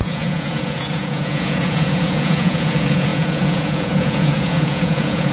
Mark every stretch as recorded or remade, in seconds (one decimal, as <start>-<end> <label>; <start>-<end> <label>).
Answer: 0.0-5.3 remade